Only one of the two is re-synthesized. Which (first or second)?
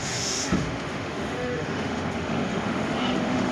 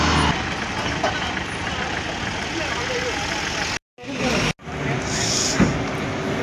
first